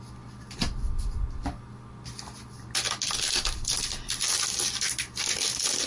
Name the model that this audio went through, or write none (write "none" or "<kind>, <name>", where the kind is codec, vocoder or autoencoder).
none